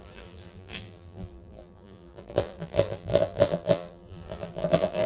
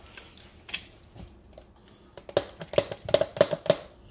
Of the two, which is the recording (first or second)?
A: second